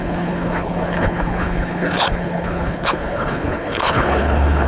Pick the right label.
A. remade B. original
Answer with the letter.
A